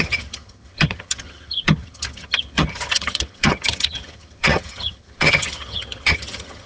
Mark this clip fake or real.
fake